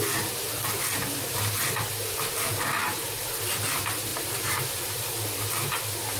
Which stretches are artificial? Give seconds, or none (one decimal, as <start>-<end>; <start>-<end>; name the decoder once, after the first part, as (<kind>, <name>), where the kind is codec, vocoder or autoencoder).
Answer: 2.8-3.4 (vocoder, BigVGAN v2); 4.1-5.1